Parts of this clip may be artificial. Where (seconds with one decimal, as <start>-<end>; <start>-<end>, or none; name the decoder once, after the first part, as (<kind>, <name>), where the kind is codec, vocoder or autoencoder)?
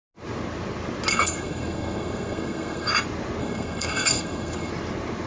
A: 1.1-2.9 (codec, SNAC); 3.4-4.7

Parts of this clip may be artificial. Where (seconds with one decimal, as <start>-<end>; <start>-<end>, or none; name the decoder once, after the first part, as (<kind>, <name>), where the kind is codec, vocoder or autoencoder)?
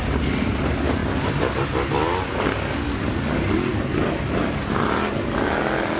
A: none